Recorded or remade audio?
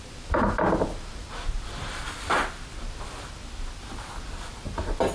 recorded